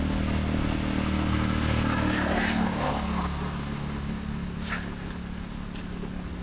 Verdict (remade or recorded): recorded